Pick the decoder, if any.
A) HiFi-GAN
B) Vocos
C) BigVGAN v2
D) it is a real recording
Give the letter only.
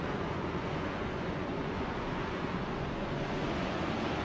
B